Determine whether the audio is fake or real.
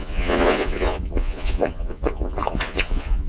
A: fake